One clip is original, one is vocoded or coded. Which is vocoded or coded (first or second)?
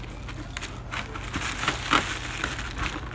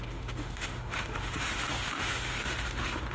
second